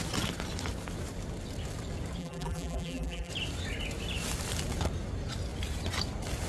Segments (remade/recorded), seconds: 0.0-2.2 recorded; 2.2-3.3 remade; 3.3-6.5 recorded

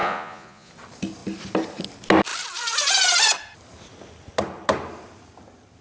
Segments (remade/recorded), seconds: 0.0-0.7 remade; 0.7-5.8 recorded

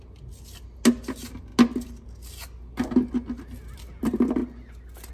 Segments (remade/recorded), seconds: 0.0-5.1 recorded

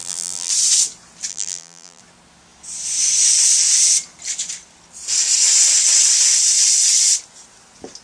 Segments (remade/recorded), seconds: 0.0-0.5 remade; 0.5-1.3 recorded; 1.3-2.0 remade; 2.0-8.0 recorded

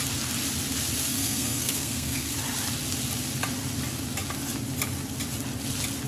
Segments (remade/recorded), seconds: 0.0-1.1 recorded; 1.1-2.3 remade; 2.3-6.1 recorded